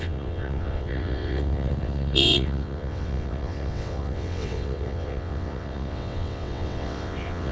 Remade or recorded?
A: remade